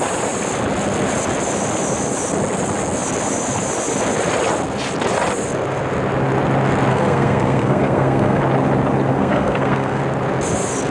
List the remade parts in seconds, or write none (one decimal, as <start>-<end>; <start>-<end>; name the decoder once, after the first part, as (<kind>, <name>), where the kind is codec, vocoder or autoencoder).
6.9-8.4 (codec, SNAC); 9.1-10.0